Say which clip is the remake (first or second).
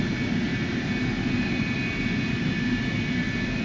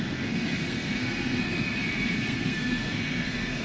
second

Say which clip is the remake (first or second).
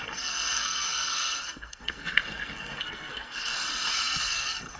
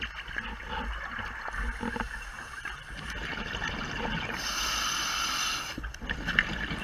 first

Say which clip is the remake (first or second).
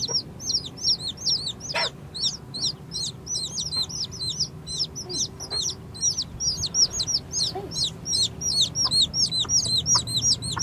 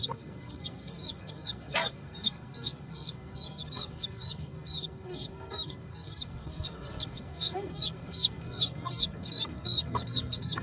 second